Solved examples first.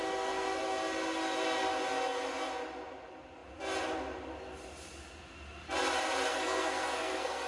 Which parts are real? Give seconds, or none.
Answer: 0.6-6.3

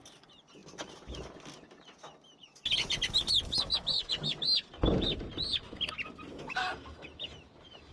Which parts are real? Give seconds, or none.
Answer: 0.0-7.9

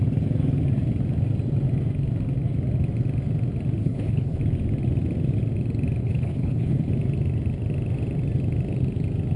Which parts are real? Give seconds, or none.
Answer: 0.0-3.8; 4.4-6.0; 6.9-9.4